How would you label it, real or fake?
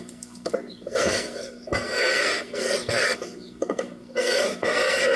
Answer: fake